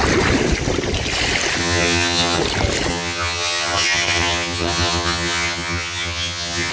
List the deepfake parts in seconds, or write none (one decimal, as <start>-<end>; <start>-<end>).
1.6-2.4; 2.9-6.7